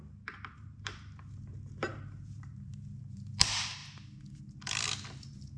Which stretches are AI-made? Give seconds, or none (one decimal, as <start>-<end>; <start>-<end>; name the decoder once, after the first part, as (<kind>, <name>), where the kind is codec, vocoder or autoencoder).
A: 0.0-3.8 (vocoder, BigVGAN v2)